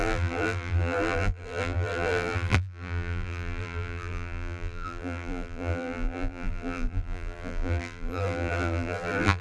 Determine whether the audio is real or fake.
fake